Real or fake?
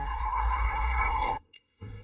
fake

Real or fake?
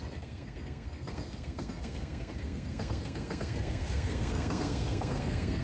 fake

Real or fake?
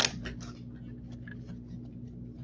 real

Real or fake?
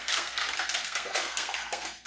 fake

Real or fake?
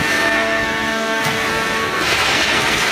fake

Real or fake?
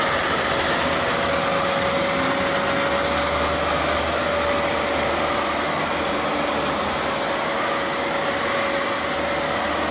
real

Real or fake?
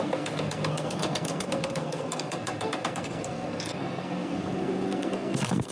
fake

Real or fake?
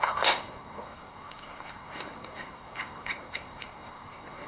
fake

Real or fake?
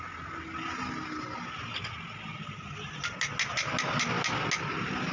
real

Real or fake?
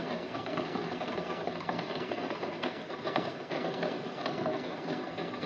fake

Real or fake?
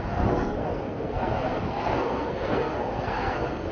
fake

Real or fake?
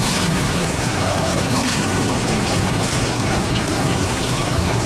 fake